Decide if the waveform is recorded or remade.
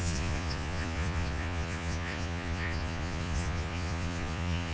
remade